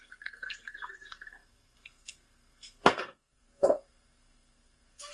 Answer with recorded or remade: remade